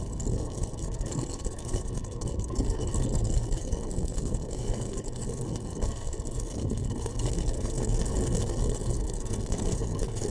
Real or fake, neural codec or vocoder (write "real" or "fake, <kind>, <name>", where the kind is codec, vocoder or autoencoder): fake, codec, SNAC